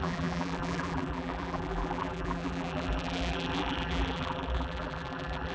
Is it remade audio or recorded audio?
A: remade